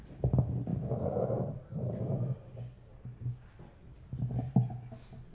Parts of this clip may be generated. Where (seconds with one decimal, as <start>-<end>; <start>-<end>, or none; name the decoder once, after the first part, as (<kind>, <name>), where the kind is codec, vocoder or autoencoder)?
0.7-2.2 (vocoder, BigVGAN v2)